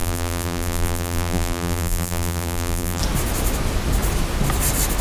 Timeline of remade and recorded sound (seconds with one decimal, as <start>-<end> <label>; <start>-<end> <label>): 0.0-3.0 remade; 3.0-5.0 recorded